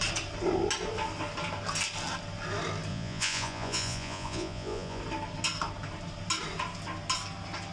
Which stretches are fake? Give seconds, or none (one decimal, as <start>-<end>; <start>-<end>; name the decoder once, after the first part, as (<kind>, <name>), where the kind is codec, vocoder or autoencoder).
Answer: 2.9-5.0 (vocoder, Vocos)